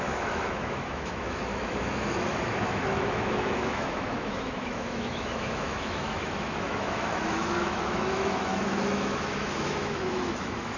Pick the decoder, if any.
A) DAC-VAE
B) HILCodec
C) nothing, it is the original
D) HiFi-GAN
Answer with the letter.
A